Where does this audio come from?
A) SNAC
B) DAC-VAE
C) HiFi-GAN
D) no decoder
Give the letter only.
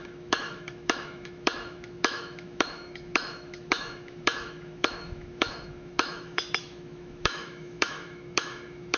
B